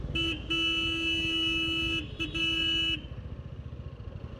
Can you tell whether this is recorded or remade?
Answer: recorded